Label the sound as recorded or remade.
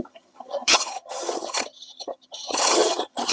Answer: remade